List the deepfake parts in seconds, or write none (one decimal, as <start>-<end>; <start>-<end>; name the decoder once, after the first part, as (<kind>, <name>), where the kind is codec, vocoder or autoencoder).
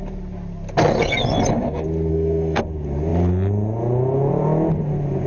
2.1-2.6 (codec, SNAC)